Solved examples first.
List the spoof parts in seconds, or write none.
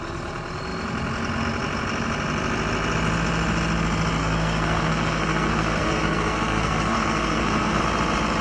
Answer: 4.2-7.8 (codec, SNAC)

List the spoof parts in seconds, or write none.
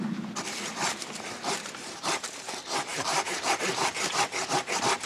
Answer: 1.0-2.2 (vocoder, BigVGAN v2); 2.9-4.6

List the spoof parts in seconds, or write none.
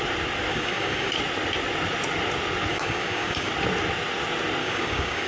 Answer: 0.5-1.1 (codec, DAC); 2.7-3.5; 4.6-5.3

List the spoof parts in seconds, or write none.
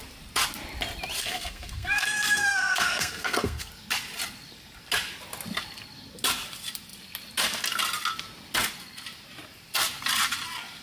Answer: 1.2-3.7 (codec, SNAC)